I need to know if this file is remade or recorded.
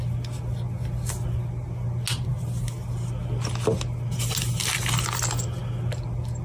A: recorded